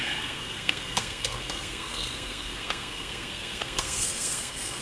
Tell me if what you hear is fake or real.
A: fake